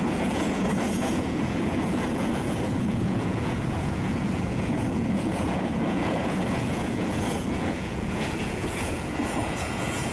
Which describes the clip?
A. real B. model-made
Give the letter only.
B